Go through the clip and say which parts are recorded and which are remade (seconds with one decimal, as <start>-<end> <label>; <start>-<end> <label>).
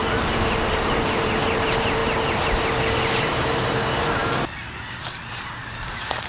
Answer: 0.0-2.0 remade; 2.0-3.3 recorded; 3.3-4.2 remade; 4.2-4.9 recorded; 4.9-6.3 remade